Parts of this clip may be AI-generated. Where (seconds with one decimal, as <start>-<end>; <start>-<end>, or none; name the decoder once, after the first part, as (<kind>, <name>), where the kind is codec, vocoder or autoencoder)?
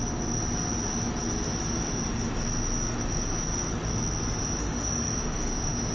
4.4-5.9 (autoencoder, DAC-VAE)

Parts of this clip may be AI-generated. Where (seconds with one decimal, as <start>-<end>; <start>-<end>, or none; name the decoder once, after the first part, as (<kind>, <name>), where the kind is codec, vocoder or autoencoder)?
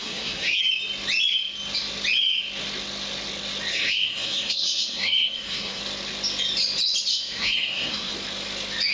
0.0-0.6 (codec, SNAC); 3.7-5.8; 7.1-8.1